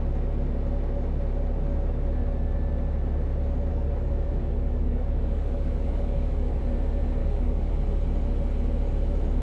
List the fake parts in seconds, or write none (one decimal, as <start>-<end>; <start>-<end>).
3.7-6.6; 7.2-7.7